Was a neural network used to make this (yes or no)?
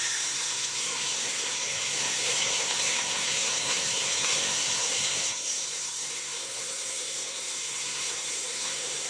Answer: yes